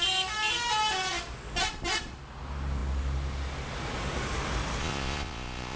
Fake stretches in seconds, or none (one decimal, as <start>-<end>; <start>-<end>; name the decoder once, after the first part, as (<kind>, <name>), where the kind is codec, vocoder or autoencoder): 4.8-5.8 (vocoder, Vocos)